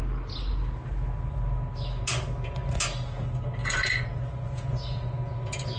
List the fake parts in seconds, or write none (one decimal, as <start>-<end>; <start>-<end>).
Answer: 3.6-5.8